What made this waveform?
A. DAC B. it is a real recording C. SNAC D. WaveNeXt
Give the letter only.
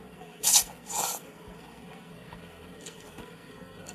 C